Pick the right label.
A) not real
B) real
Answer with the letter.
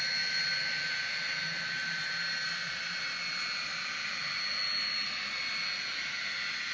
B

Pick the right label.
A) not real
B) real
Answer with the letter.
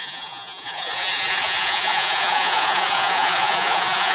A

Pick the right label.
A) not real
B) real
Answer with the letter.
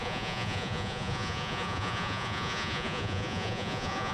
A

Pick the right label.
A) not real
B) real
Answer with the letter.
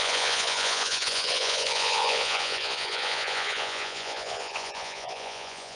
A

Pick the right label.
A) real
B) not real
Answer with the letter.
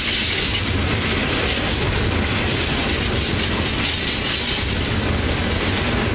A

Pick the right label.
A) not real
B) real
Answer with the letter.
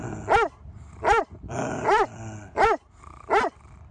B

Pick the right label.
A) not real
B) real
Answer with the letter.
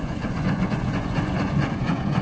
A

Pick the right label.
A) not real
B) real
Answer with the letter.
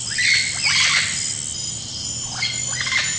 B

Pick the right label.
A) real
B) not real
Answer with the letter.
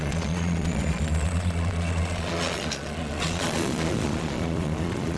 B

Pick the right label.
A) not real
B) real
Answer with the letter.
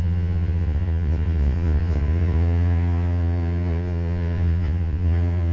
A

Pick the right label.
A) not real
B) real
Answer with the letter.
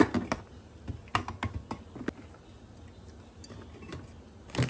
B